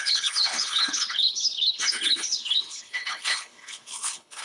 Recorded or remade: remade